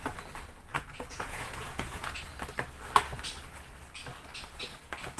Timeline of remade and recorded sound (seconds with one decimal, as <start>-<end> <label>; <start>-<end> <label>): 0.0-0.7 recorded; 0.7-2.3 remade; 2.3-5.2 recorded